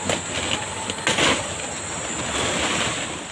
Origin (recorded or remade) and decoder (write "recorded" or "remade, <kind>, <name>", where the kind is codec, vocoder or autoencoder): recorded